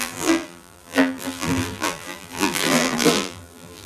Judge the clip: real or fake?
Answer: fake